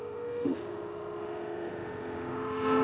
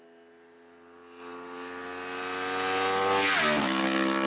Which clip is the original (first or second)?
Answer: second